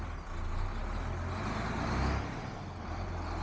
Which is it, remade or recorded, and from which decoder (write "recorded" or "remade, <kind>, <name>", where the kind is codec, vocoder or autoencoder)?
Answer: recorded